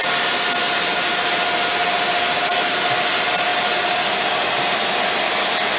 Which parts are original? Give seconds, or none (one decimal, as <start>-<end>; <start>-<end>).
0.0-5.8